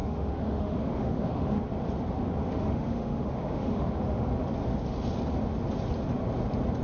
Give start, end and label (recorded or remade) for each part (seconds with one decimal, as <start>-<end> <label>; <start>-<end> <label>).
0.0-1.6 remade; 1.6-2.4 recorded; 2.4-4.3 remade; 4.3-6.8 recorded